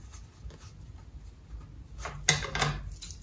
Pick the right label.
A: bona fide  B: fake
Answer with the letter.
A